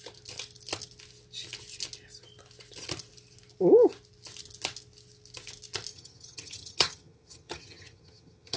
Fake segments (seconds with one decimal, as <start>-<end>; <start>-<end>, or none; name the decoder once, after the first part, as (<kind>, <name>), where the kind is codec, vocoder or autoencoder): 5.9-8.6 (vocoder, HiFi-GAN)